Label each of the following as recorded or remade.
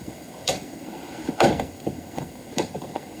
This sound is remade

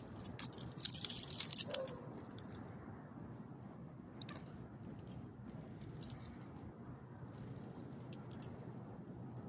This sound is recorded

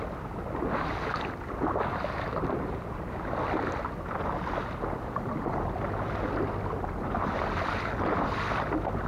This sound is recorded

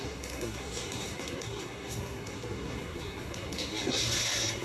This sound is remade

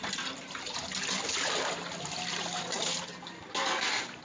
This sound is recorded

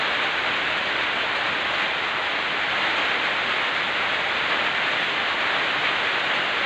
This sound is recorded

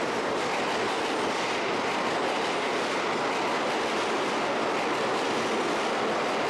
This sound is recorded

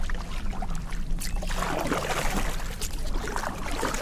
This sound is recorded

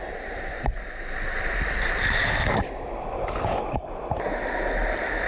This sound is recorded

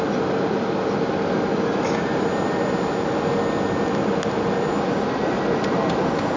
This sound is recorded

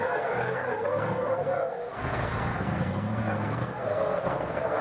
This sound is remade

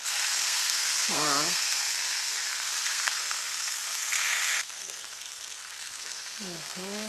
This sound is remade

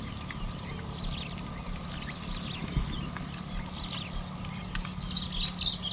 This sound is recorded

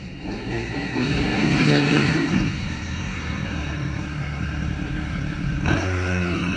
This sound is remade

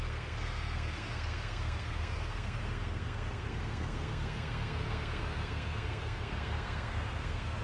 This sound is remade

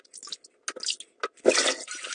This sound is recorded